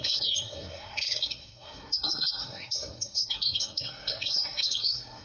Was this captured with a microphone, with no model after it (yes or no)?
no